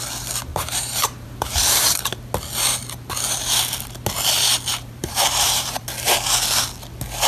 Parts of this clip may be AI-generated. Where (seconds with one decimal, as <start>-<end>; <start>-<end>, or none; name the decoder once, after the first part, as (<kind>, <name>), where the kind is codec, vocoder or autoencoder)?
0.5-2.1 (vocoder, BigVGAN v2); 4.7-5.8